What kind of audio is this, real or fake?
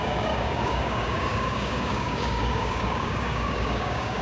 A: fake